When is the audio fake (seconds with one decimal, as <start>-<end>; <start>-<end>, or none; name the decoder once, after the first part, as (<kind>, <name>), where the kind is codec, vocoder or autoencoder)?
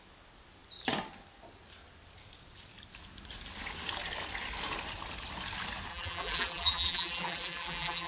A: 5.9-8.1 (vocoder, BigVGAN v2)